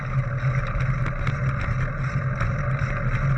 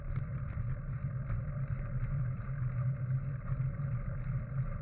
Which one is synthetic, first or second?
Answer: second